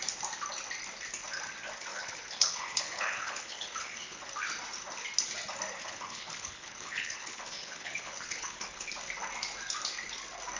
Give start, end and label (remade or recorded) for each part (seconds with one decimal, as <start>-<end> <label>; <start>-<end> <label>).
0.0-1.9 recorded; 1.9-4.2 remade; 4.2-5.8 recorded; 5.8-8.9 remade; 8.9-10.6 recorded